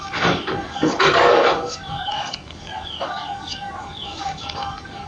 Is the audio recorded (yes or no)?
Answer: no